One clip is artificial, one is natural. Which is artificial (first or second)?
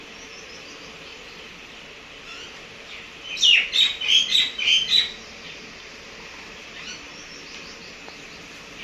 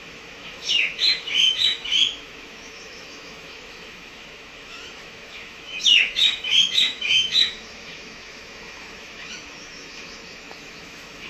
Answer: second